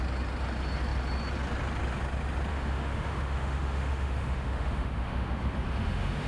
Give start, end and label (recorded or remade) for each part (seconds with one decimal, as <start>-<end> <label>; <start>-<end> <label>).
0.0-2.5 recorded; 2.5-6.3 remade